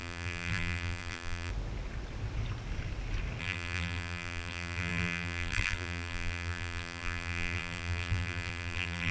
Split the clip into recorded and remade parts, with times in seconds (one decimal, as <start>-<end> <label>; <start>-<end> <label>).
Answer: 0.0-1.5 remade; 1.5-3.4 recorded; 3.4-9.1 remade